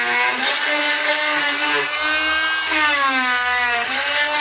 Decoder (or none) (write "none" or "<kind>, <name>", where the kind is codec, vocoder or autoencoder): none